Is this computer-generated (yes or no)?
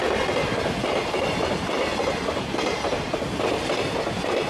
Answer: no